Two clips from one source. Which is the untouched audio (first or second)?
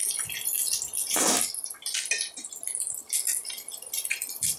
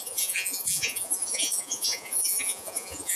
first